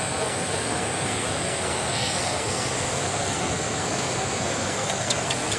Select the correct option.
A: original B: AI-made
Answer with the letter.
B